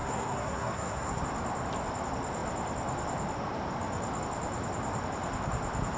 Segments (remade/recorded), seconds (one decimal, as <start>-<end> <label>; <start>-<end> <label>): 0.0-1.2 remade; 1.2-6.0 recorded